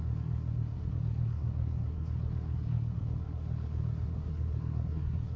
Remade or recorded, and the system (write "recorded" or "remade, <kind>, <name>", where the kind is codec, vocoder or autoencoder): remade, codec, SNAC